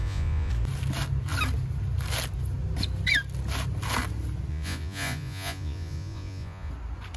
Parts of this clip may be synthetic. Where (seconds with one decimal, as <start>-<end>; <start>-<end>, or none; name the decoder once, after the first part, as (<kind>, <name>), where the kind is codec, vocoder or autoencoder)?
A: 0.0-0.5 (vocoder, Vocos); 4.5-6.7